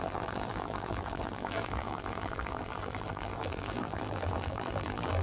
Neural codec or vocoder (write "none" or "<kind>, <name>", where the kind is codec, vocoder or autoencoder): vocoder, BigVGAN v2